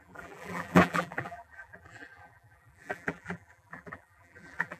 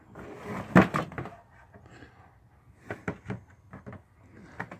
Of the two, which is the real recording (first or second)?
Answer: second